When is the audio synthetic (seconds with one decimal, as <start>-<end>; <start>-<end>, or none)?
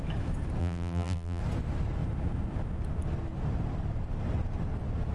0.6-1.4